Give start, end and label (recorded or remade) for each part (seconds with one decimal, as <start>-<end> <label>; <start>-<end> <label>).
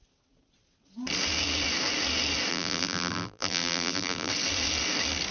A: 0.0-2.5 recorded; 2.5-4.3 remade; 4.3-5.3 recorded